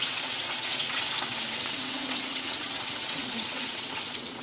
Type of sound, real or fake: fake